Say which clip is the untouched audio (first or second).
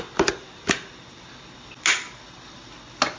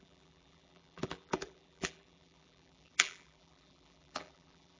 first